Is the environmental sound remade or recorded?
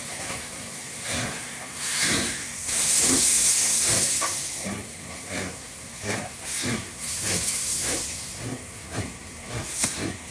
remade